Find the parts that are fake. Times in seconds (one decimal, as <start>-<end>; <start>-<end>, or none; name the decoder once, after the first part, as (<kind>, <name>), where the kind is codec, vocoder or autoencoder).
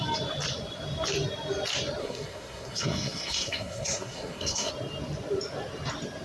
2.0-4.7 (codec, SNAC)